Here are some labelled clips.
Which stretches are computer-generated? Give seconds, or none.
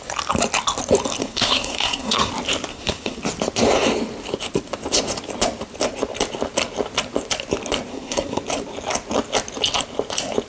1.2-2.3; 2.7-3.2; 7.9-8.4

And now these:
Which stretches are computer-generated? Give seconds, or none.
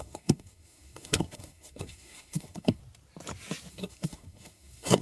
0.0-2.8; 3.7-5.0